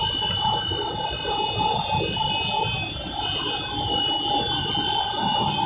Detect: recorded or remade recorded